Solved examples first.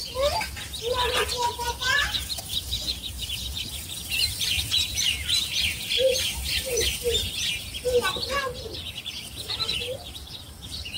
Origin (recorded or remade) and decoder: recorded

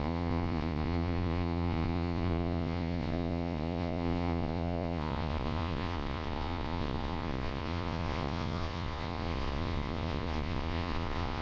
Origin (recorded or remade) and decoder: remade, vocoder, Vocos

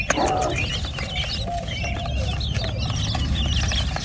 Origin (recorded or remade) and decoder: recorded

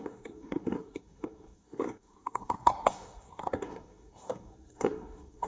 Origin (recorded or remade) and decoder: remade, codec, SNAC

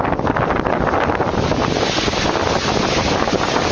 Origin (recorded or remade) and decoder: recorded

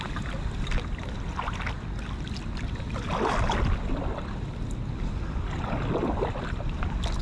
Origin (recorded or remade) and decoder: recorded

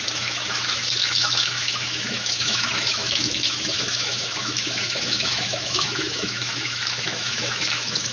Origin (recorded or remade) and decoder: remade, autoencoder, DAC-VAE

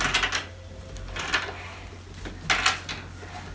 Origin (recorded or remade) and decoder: recorded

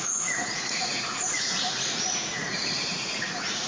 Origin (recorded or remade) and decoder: remade, vocoder, Vocos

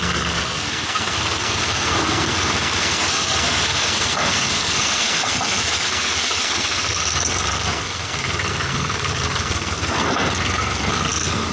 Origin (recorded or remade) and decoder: remade, codec, SNAC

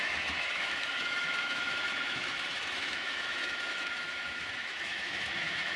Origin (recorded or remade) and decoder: remade, autoencoder, DAC-VAE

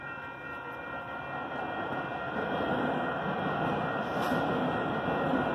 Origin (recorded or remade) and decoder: recorded